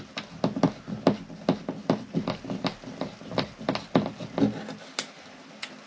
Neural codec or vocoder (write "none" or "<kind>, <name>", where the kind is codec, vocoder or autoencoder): none